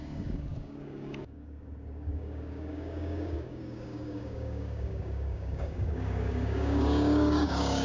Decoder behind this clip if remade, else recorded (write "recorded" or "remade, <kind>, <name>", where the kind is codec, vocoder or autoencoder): remade, codec, DAC